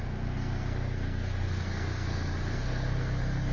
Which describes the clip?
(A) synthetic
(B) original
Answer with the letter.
A